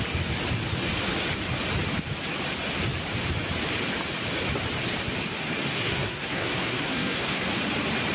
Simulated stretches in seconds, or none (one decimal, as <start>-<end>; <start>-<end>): 5.7-7.5